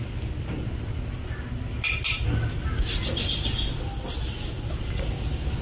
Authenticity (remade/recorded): recorded